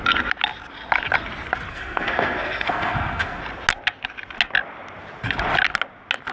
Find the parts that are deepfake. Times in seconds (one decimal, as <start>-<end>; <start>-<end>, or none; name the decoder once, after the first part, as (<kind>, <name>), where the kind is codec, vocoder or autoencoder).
1.7-3.4 (codec, SNAC)